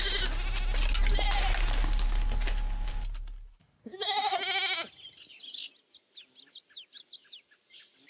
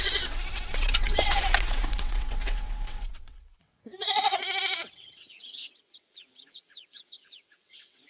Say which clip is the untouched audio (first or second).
first